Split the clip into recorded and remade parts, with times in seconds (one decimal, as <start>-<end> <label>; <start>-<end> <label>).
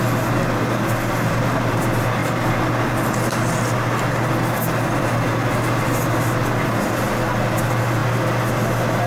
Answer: 0.0-9.1 recorded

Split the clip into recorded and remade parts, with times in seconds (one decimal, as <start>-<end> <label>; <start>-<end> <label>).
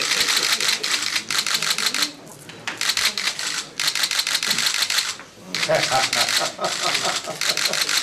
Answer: 0.0-8.0 recorded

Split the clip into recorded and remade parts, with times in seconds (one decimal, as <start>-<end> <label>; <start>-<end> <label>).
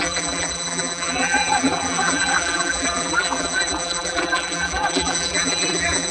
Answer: 0.0-6.1 remade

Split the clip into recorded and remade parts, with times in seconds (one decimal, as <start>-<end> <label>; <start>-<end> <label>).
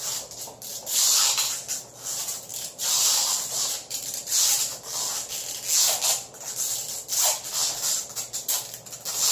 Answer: 0.0-0.7 recorded; 0.7-1.3 remade; 1.3-2.5 recorded; 2.5-4.7 remade; 4.7-9.3 recorded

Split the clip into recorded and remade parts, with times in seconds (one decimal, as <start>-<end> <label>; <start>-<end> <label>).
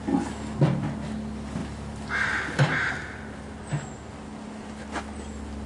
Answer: 0.0-1.6 recorded; 1.6-2.9 remade; 2.9-5.7 recorded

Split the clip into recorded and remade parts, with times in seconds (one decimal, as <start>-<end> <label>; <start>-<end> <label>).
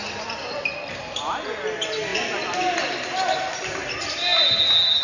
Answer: 0.0-5.0 recorded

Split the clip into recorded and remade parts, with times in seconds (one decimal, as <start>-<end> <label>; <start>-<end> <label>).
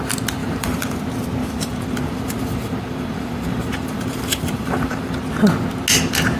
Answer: 0.0-0.4 recorded; 0.4-1.0 remade; 1.0-1.4 recorded; 1.4-5.2 remade; 5.2-6.4 recorded